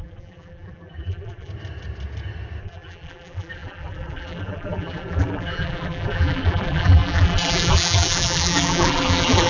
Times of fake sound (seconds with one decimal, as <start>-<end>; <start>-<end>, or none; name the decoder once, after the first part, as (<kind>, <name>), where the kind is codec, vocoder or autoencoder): 0.0-1.5 (vocoder, BigVGAN v2); 2.6-9.5